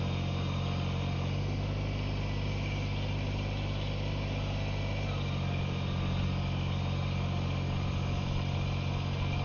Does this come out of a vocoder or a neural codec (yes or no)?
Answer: no